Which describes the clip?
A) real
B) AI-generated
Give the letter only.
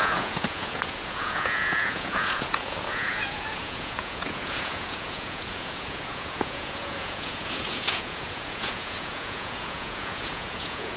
B